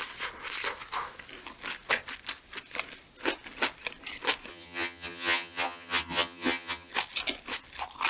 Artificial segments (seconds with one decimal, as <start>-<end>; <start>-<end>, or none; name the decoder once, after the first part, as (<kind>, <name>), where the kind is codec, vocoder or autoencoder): 4.5-6.9 (vocoder, HiFi-GAN)